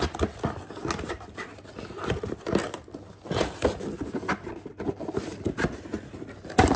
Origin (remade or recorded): recorded